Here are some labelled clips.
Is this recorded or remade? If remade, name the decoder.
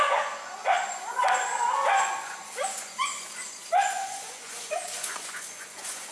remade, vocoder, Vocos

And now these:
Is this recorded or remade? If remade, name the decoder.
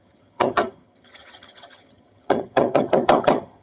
remade, vocoder, HiFi-GAN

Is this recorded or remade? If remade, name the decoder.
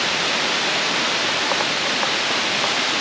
recorded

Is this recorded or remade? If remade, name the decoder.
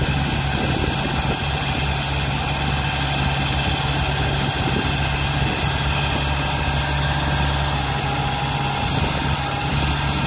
recorded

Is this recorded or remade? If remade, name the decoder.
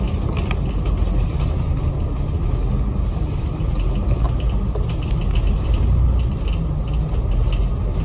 recorded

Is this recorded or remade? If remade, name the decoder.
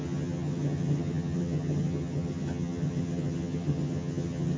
remade, vocoder, HiFi-GAN